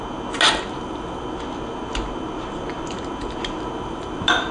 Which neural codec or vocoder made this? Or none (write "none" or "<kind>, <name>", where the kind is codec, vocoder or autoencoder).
none